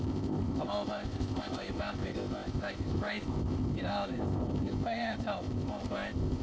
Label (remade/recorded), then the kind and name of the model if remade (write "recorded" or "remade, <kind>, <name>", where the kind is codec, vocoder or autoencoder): remade, codec, ZipCodec